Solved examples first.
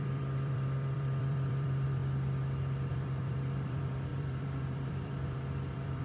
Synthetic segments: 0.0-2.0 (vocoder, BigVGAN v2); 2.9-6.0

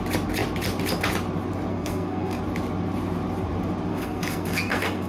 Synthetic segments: 1.7-2.4 (codec, SNAC); 3.9-5.1